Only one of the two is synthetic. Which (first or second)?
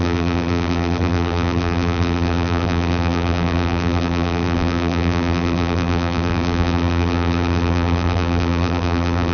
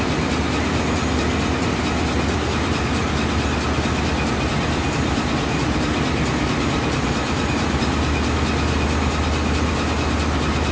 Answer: first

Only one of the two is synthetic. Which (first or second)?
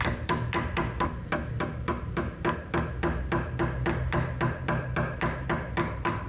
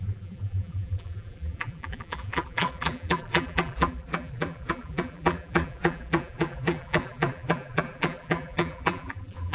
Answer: second